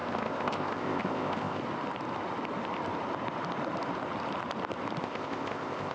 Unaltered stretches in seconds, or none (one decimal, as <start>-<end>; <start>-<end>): 1.6-5.0